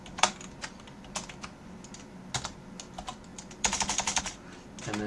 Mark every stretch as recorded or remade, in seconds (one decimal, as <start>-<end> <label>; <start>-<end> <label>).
0.0-3.3 recorded; 3.3-4.2 remade; 4.2-5.1 recorded